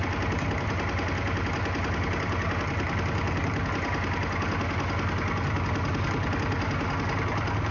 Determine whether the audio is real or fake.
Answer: real